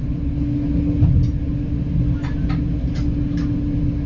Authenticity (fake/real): real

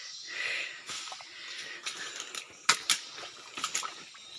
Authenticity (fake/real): real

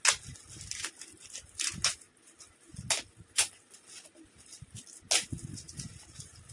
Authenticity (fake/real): real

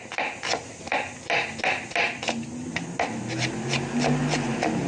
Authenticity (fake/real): real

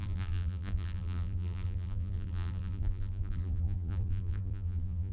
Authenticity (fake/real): fake